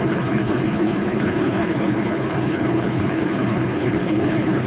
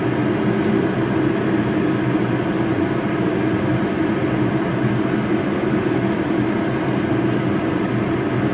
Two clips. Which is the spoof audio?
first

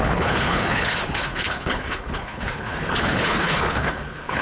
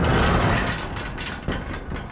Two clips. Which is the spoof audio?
first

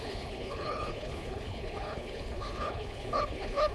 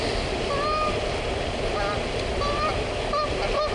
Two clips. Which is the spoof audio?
first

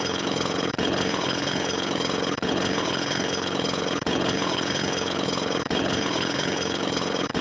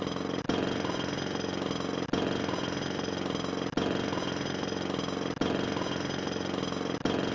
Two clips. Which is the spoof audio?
first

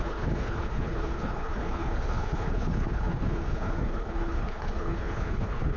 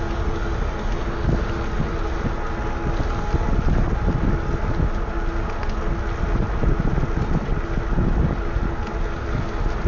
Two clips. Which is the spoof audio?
first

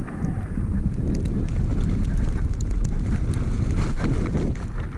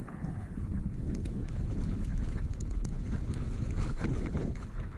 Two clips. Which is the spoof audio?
second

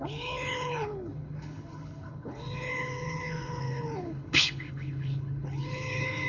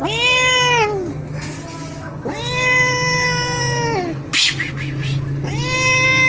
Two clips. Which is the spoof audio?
first